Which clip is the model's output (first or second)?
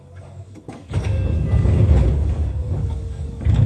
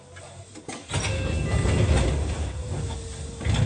first